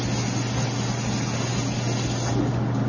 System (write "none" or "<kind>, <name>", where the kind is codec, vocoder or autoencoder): none